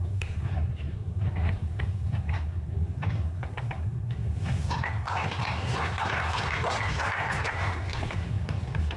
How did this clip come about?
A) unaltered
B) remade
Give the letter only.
B